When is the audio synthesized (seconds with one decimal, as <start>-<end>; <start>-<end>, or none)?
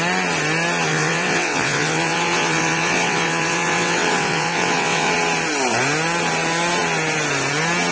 0.9-5.1